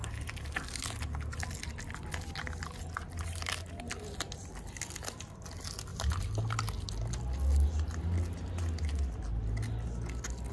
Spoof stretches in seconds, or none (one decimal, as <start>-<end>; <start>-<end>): none